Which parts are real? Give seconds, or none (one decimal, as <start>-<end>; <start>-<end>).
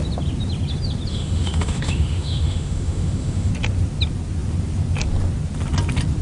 0.0-1.1; 3.5-6.2